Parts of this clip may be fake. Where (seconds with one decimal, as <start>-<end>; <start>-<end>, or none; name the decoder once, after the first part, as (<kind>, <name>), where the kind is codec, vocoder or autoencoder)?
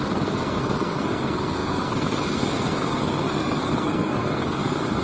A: 0.0-5.0 (codec, SNAC)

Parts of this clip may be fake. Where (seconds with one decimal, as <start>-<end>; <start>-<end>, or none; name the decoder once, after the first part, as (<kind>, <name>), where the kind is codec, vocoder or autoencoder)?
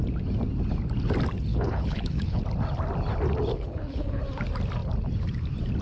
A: 1.5-2.4 (codec, HILCodec); 3.5-4.2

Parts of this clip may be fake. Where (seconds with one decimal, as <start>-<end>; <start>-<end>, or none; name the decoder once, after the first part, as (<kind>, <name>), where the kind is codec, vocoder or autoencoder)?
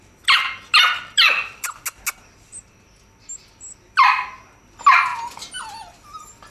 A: none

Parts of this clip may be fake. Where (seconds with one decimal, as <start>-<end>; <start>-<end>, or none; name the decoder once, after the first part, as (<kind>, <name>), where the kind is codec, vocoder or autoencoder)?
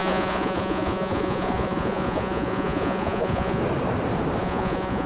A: 0.0-3.6 (vocoder, Vocos); 4.4-5.1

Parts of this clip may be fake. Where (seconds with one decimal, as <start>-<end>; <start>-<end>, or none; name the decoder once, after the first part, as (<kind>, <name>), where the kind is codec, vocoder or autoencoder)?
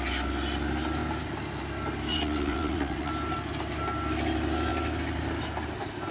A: 2.1-3.1 (vocoder, WaveNeXt)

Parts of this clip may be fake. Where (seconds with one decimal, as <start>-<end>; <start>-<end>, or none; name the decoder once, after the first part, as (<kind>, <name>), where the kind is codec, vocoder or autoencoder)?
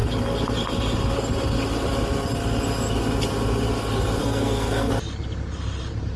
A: 4.2-4.9 (codec, SNAC)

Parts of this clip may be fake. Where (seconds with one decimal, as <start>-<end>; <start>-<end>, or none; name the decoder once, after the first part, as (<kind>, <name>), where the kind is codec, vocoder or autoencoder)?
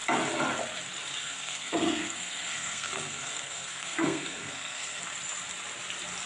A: 1.2-5.0 (codec, SNAC)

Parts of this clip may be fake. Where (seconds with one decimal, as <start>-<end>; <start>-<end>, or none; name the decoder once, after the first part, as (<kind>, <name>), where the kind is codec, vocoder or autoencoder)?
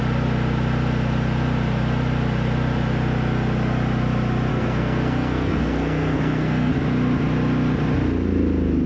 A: 4.5-6.7 (codec, SNAC)